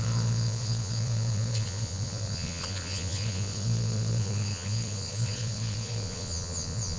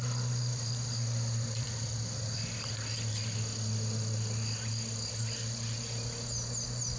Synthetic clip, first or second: first